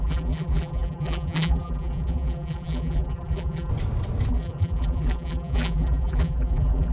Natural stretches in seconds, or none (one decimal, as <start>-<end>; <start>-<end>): 3.7-4.3